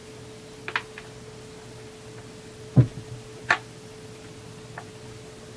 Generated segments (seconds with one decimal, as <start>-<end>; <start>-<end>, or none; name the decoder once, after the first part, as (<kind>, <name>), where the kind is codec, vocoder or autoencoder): none